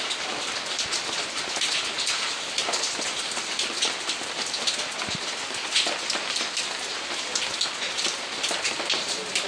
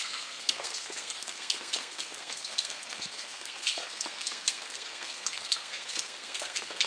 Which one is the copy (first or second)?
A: second